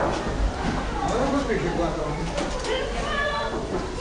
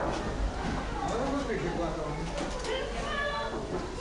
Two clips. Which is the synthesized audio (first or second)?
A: first